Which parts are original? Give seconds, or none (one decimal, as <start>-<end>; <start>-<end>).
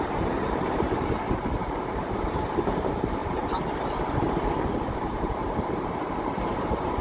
3.2-4.9; 5.4-6.2